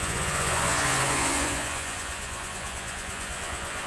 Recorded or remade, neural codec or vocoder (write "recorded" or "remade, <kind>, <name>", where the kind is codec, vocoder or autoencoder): remade, vocoder, Vocos